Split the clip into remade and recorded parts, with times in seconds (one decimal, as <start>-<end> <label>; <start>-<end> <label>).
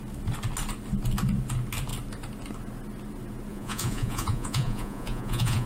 0.0-3.5 recorded; 3.5-5.7 remade